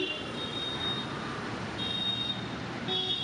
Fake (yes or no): no